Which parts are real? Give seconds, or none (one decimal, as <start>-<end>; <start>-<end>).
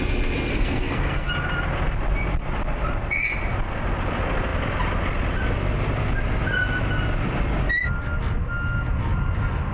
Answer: 0.0-0.5; 1.3-9.7